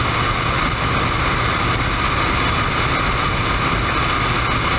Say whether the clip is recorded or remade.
recorded